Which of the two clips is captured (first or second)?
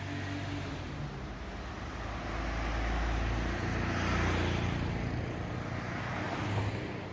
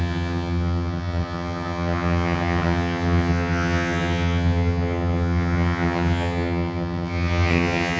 first